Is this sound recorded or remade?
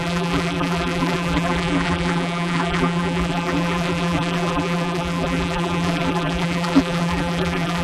remade